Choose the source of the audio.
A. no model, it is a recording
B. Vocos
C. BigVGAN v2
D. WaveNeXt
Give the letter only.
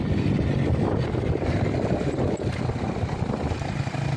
A